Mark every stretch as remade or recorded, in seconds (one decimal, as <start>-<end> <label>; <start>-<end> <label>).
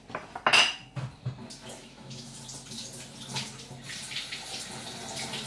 0.0-1.8 recorded; 1.8-2.4 remade; 2.4-5.5 recorded